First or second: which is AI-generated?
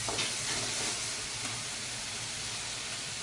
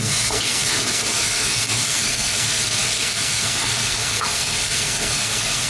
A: second